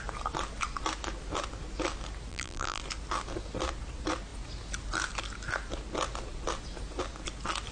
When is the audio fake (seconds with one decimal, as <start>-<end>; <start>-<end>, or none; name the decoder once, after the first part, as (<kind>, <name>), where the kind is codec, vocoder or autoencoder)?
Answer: 2.3-2.8 (vocoder, BigVGAN v2)